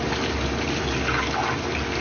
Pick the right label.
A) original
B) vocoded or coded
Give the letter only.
A